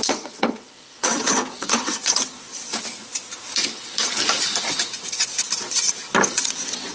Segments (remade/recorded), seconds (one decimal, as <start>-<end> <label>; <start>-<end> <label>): 0.0-2.7 remade; 2.7-6.3 recorded; 6.3-6.9 remade